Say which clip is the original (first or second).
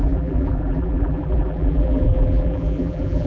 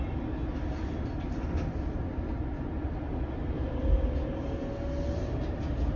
second